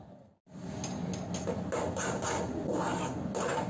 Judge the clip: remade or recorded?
recorded